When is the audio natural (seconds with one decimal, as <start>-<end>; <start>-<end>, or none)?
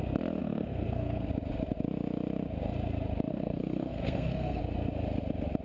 0.0-0.4; 1.3-3.3; 4.6-5.6